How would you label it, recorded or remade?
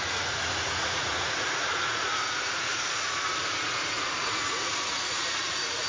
remade